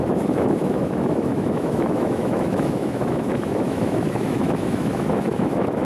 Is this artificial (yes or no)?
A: yes